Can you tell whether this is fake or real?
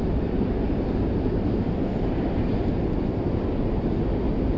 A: real